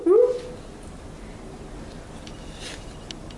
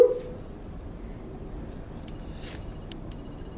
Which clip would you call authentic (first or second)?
first